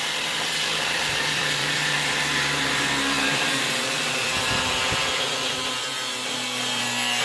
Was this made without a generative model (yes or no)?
no